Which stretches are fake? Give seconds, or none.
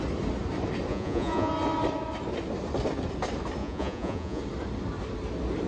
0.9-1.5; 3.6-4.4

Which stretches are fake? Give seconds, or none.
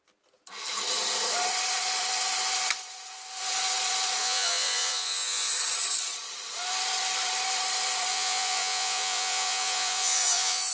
4.2-5.5; 8.1-10.7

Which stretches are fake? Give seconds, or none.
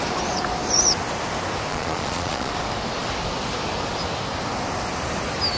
1.7-2.5